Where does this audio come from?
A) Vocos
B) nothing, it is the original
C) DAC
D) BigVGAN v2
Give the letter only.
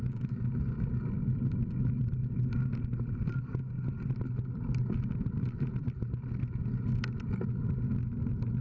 B